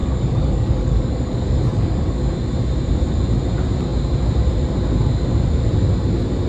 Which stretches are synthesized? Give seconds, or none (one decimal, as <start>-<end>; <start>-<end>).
0.0-2.3